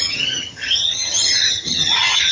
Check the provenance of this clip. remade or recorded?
remade